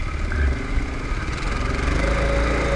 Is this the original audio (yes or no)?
yes